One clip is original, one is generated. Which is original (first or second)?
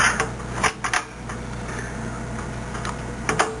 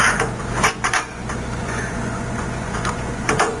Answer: first